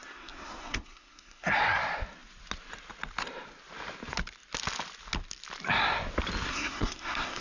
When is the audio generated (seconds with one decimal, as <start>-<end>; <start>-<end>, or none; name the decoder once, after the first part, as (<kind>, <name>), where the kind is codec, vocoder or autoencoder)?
0.0-1.6 (codec, SNAC); 6.5-7.4